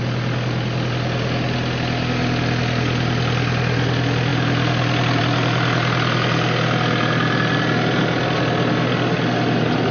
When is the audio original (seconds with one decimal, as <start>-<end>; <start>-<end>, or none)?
0.0-9.9